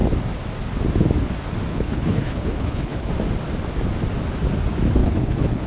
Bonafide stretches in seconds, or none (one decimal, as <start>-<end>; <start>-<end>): 0.0-1.7; 3.1-5.0